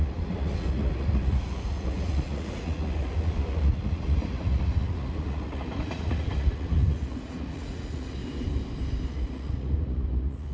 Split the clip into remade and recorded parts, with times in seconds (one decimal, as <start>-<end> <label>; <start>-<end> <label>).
0.0-8.2 remade; 8.2-9.1 recorded; 9.1-10.5 remade